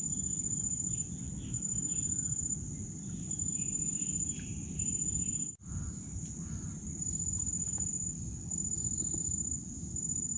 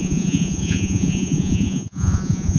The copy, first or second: second